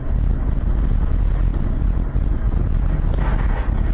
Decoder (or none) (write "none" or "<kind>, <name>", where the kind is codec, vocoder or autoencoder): none